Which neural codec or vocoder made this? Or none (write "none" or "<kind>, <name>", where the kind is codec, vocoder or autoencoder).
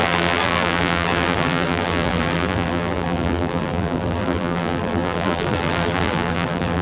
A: vocoder, BigVGAN v2